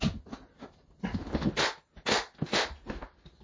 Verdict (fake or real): real